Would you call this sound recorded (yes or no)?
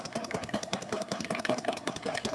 no